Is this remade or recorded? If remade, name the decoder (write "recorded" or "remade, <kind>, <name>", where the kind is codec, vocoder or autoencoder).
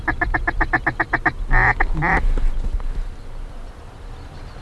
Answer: recorded